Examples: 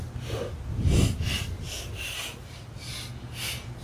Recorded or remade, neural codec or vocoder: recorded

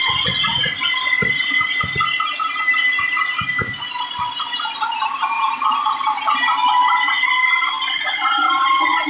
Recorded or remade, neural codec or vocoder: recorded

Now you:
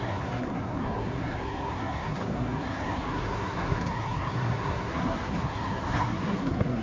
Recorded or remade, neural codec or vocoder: remade, codec, SNAC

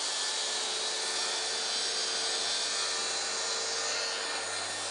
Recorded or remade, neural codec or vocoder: recorded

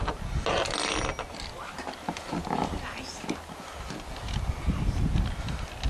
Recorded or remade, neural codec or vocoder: recorded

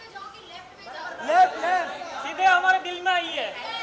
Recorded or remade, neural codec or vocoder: remade, vocoder, BigVGAN v2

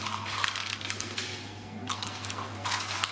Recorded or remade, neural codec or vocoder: remade, codec, SNAC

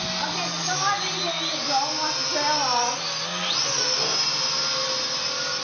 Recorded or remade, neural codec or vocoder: recorded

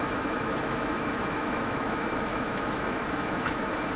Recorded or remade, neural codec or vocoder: remade, autoencoder, DAC-VAE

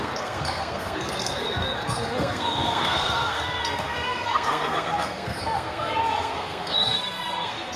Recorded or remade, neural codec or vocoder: remade, codec, SNAC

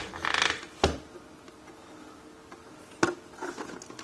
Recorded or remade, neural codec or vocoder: recorded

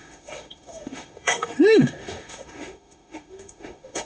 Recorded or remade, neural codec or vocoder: remade, autoencoder, DAC-VAE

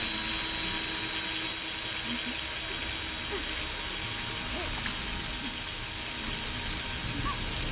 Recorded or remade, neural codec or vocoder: recorded